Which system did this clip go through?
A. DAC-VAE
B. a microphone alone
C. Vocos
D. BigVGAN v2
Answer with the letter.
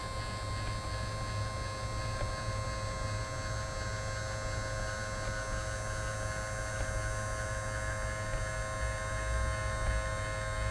B